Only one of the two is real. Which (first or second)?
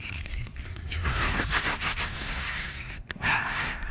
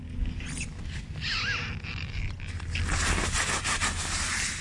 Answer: second